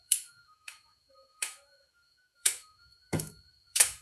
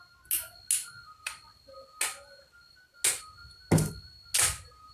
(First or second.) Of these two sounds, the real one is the second